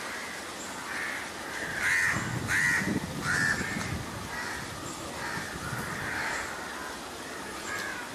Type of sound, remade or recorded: recorded